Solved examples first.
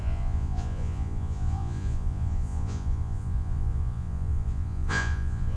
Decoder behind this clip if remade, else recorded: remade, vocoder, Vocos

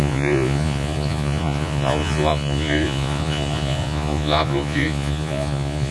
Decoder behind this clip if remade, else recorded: remade, vocoder, Vocos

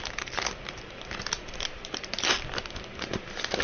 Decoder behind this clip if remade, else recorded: recorded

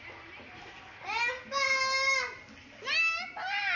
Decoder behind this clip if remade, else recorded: recorded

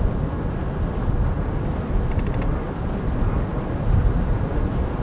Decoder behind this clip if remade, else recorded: recorded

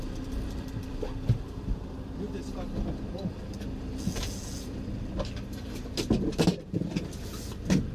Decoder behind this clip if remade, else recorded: recorded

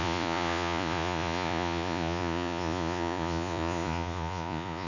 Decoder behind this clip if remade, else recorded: remade, vocoder, Vocos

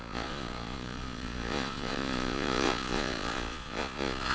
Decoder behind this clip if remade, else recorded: remade, vocoder, Vocos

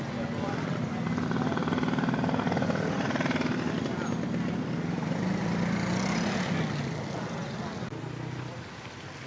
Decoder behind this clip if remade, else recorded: recorded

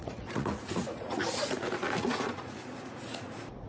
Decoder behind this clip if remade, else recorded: remade, vocoder, Vocos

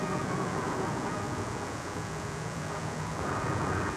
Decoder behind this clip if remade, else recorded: remade, vocoder, Vocos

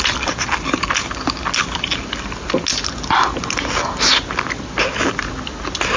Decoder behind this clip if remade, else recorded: recorded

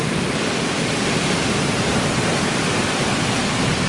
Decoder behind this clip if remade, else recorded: recorded